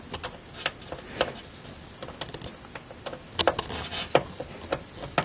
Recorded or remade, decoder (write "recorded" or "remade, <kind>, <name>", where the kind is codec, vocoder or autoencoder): recorded